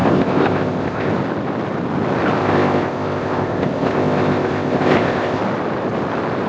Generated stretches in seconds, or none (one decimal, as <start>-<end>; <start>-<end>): 0.0-1.1; 2.4-5.4